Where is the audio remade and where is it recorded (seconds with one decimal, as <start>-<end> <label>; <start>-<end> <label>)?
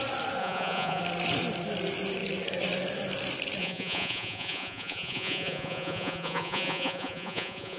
0.0-0.4 recorded; 0.4-1.0 remade; 1.0-3.6 recorded; 3.6-7.8 remade